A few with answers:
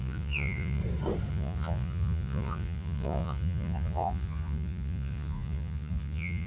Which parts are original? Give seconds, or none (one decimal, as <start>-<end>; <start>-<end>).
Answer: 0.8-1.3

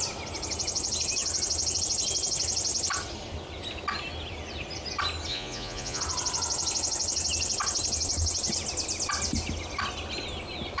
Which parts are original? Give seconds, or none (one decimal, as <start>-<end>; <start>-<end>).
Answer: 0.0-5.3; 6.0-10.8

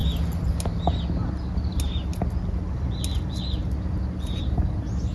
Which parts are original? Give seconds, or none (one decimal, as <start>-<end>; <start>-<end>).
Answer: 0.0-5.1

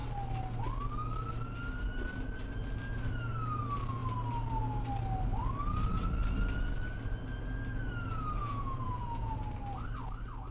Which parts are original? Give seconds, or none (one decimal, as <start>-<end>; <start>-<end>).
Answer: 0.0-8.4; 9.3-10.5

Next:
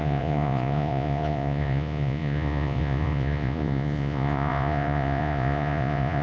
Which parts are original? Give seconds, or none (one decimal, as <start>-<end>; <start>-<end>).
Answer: none